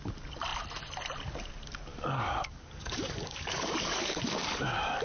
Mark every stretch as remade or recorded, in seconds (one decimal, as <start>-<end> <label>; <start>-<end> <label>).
0.0-1.9 recorded; 1.9-5.0 remade